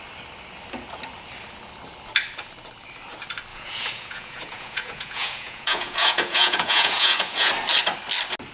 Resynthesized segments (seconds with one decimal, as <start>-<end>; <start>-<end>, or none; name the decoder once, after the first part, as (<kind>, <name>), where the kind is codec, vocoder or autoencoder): 3.5-7.5 (vocoder, Vocos)